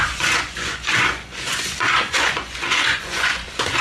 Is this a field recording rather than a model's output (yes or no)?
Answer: no